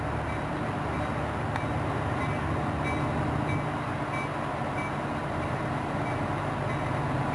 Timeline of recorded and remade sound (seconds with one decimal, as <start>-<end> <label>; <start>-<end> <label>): 0.0-5.2 recorded; 5.2-6.0 remade; 6.0-7.3 recorded